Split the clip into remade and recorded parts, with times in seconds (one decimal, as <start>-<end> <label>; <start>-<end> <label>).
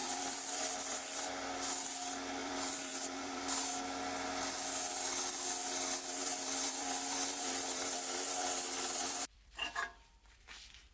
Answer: 0.0-1.3 remade; 1.3-2.4 recorded; 2.4-3.4 remade; 3.4-6.2 recorded; 6.2-10.5 remade; 10.5-10.9 recorded